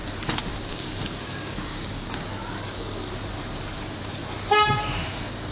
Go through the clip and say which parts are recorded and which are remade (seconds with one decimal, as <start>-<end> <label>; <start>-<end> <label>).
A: 0.0-0.7 recorded; 0.7-2.4 remade; 2.4-4.9 recorded; 4.9-5.5 remade